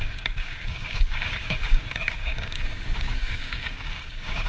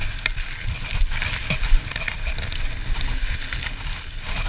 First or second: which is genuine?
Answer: second